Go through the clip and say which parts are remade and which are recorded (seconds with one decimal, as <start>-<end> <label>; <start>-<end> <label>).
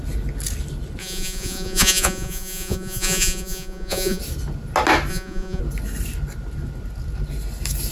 0.0-1.0 recorded; 1.0-4.2 remade; 4.2-5.1 recorded; 5.1-5.6 remade; 5.6-7.9 recorded